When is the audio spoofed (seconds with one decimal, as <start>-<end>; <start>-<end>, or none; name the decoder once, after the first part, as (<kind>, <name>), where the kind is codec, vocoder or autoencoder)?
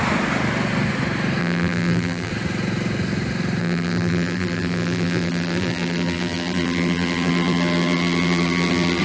1.4-2.3 (vocoder, BigVGAN v2); 3.6-9.0